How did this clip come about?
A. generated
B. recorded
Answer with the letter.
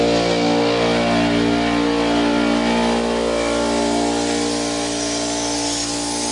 B